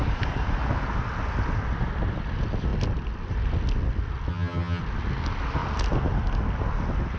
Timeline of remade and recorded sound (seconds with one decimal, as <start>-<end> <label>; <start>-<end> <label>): 0.0-4.3 recorded; 4.3-4.8 remade; 4.8-7.2 recorded